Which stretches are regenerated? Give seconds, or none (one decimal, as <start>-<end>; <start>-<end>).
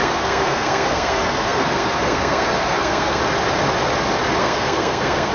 0.0-3.2; 4.4-5.3